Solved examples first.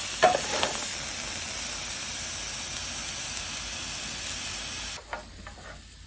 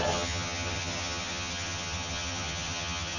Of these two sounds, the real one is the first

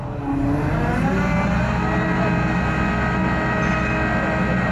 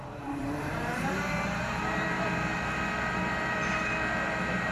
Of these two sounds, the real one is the first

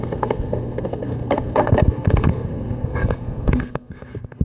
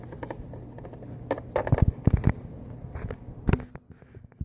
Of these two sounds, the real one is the second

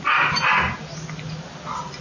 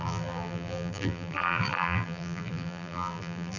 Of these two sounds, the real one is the first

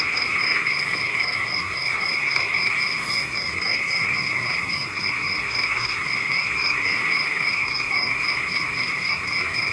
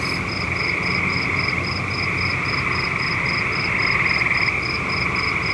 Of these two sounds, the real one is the second